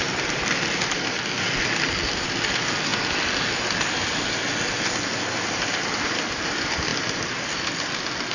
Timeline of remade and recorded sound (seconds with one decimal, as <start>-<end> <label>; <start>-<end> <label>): 0.0-8.3 recorded